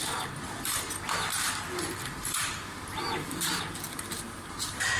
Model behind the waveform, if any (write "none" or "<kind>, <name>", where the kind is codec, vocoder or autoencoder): vocoder, BigVGAN v2